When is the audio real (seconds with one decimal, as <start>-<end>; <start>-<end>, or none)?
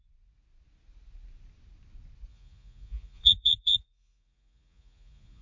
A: 0.0-2.3